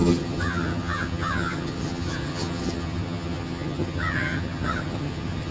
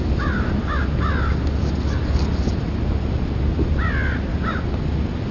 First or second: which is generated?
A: first